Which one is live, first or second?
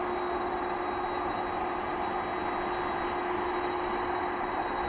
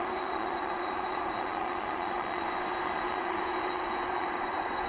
first